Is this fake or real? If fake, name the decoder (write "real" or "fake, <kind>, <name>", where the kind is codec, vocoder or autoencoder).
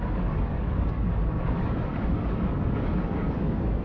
fake, codec, DAC